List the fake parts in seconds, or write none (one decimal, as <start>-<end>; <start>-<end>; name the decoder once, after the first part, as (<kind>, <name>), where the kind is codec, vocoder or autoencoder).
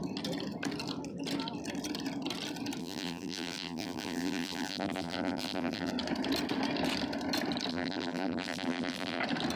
2.8-5.9 (vocoder, BigVGAN v2); 7.7-9.2